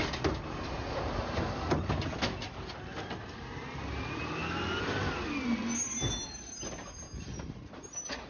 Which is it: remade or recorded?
recorded